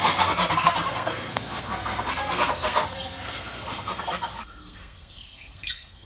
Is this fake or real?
fake